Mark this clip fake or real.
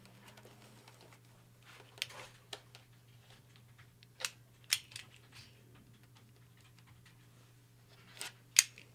real